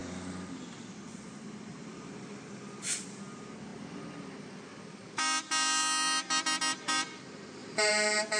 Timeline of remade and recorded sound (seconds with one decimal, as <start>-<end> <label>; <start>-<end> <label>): 0.0-8.4 recorded